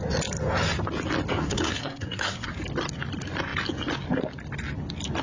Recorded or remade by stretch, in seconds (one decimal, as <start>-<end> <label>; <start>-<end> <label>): 0.0-1.4 recorded; 1.4-2.5 remade; 2.5-5.2 recorded